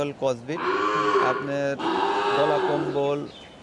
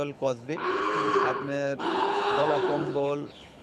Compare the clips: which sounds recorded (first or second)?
first